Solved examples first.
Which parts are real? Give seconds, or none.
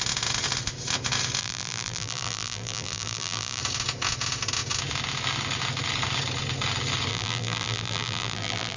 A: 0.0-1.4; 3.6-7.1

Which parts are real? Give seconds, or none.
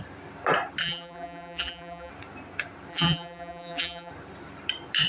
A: 0.0-0.8; 2.1-2.9; 4.1-5.1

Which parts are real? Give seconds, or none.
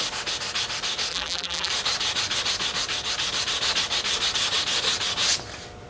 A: 0.0-1.1; 1.7-5.9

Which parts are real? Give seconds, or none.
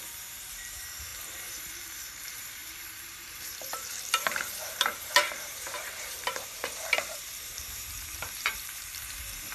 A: none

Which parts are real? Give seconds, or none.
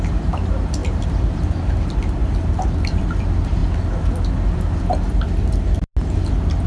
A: 0.0-6.7